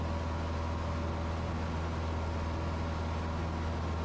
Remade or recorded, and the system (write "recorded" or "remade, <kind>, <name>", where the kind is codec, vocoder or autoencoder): recorded